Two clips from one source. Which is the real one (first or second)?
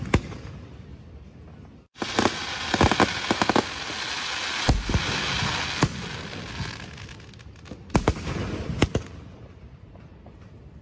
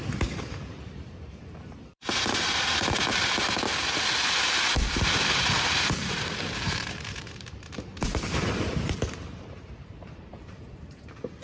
first